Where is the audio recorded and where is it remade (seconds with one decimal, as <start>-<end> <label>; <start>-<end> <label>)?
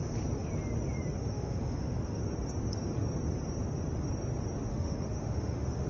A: 0.0-1.3 recorded; 1.3-2.2 remade; 2.2-4.7 recorded; 4.7-5.9 remade